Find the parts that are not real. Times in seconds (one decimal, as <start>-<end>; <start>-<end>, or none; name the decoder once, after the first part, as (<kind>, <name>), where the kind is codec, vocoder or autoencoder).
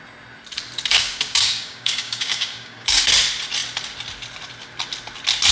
0.9-3.1 (codec, DAC)